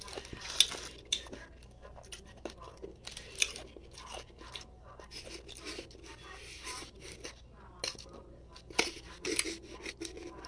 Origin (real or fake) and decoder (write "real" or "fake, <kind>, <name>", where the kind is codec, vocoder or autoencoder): real